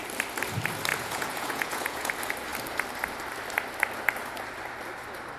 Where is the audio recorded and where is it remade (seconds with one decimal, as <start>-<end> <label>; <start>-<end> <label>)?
0.0-0.9 recorded; 0.9-2.1 remade; 2.1-5.4 recorded